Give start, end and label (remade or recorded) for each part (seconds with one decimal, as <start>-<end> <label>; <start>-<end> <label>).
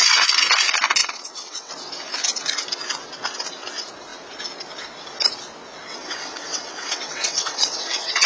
0.0-1.0 recorded; 1.0-1.7 remade; 1.7-5.9 recorded; 5.9-8.3 remade